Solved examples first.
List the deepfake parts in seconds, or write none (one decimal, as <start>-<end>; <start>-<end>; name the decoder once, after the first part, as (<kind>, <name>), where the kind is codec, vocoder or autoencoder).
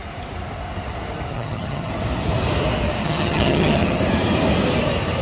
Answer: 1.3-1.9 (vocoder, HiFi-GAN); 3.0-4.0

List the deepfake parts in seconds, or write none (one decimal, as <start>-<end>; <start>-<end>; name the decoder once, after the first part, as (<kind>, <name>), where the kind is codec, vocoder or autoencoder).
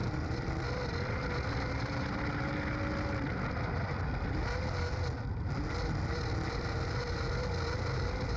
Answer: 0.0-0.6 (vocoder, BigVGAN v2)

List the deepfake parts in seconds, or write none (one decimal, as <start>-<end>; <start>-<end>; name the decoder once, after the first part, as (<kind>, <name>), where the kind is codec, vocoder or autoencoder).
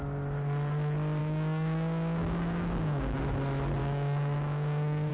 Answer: 1.2-3.2 (codec, DAC); 3.8-5.1